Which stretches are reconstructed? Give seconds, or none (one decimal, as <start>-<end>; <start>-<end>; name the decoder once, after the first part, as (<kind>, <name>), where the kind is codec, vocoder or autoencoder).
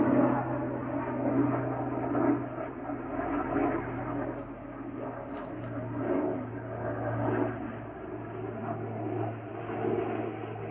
none